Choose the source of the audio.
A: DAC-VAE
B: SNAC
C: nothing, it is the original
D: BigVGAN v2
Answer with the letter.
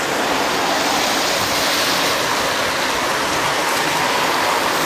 C